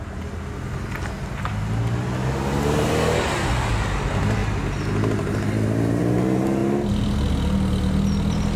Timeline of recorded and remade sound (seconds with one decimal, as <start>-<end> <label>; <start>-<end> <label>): 0.0-8.6 recorded